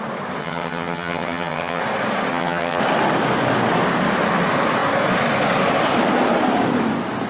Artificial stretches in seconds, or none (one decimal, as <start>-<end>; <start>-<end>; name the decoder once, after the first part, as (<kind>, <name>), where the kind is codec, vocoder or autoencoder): 0.4-1.8 (vocoder, HiFi-GAN); 2.3-2.8